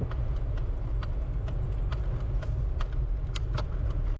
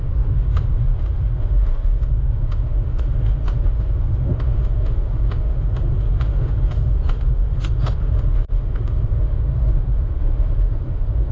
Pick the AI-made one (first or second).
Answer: second